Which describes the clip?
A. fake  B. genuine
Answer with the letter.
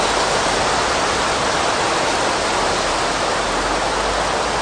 B